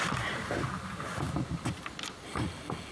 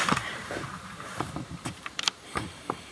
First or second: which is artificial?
second